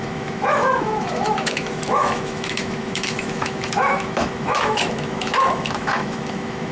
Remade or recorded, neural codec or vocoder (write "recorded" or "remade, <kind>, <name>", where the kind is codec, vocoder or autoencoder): remade, autoencoder, DAC-VAE